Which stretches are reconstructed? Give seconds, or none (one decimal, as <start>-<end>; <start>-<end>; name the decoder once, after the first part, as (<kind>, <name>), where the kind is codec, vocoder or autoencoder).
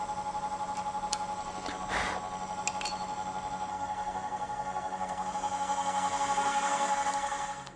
3.7-7.8 (codec, SNAC)